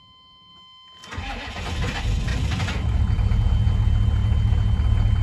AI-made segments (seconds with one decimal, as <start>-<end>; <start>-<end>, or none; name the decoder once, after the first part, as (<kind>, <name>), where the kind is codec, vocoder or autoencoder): none